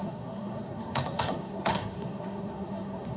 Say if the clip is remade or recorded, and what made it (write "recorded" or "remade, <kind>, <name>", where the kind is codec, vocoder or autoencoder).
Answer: remade, codec, SNAC